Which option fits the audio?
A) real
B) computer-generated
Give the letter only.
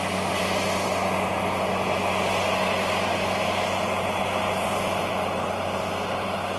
A